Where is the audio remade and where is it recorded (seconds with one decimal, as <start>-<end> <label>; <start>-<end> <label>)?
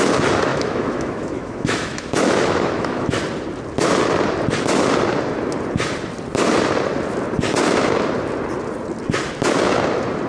0.0-0.5 recorded; 0.5-3.2 remade; 3.2-10.3 recorded